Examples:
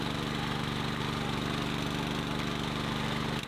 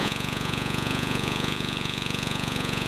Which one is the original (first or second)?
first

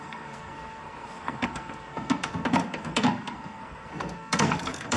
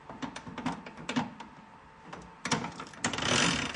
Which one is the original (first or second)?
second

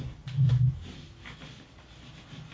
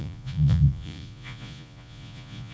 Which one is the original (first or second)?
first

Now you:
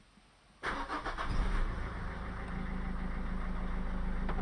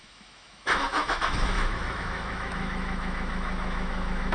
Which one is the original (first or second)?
first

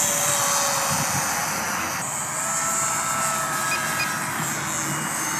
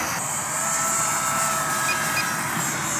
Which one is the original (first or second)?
first